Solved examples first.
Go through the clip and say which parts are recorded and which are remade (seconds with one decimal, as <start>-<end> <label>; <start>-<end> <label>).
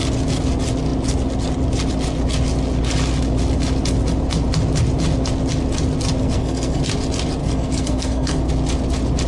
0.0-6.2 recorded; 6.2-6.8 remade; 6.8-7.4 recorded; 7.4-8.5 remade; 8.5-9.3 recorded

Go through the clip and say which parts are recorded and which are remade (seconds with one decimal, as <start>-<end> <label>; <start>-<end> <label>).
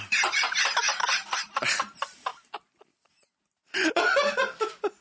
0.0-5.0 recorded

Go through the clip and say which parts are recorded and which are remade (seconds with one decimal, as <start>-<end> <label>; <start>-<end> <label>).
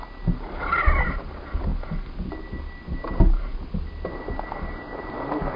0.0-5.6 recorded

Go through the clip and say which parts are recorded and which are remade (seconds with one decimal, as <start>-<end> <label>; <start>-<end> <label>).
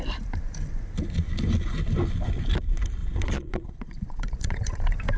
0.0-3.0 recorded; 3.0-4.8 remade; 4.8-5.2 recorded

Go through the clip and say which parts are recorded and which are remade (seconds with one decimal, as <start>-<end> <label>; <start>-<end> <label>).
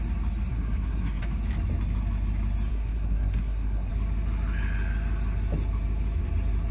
0.0-0.5 recorded; 0.5-1.2 remade; 1.2-2.7 recorded; 2.7-3.9 remade; 3.9-6.7 recorded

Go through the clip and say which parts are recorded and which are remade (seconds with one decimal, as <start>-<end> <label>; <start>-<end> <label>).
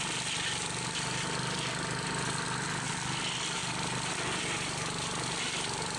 0.0-6.0 recorded